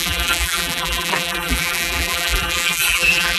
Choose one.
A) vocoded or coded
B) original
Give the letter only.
A